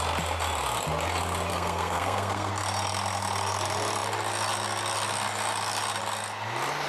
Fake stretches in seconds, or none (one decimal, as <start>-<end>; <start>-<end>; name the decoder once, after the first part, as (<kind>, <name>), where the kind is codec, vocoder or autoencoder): 1.5-2.5 (codec, SNAC)